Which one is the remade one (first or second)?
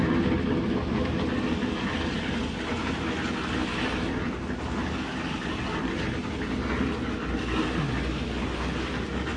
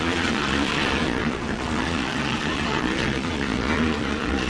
second